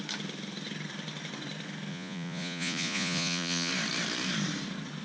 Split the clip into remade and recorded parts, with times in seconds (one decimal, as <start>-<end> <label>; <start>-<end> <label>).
0.0-1.9 recorded; 1.9-3.7 remade; 3.7-5.0 recorded